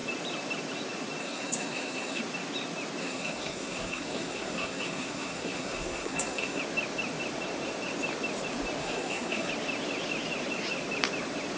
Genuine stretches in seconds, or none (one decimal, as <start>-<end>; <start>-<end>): 0.0-1.2; 2.2-3.0; 6.6-8.8; 9.5-11.6